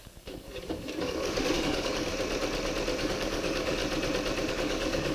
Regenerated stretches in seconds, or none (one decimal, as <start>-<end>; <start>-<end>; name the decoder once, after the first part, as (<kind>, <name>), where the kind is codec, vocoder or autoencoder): 0.0-2.1 (codec, DAC); 3.0-3.8; 4.5-5.1